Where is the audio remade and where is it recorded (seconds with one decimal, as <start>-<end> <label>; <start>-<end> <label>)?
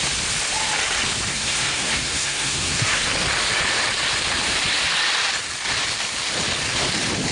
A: 0.0-1.3 recorded; 1.3-3.1 remade; 3.1-7.3 recorded